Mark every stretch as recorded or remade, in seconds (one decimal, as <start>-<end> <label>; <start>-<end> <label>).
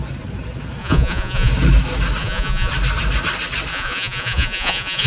0.0-0.8 recorded; 0.8-1.5 remade; 1.5-2.2 recorded; 2.2-2.7 remade; 2.7-3.7 recorded; 3.7-5.1 remade